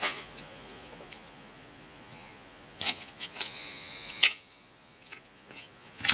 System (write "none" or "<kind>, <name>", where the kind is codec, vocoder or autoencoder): vocoder, Vocos